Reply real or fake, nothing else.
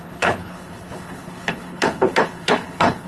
fake